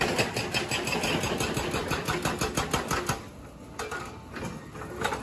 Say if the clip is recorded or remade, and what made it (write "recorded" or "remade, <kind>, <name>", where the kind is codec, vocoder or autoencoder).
recorded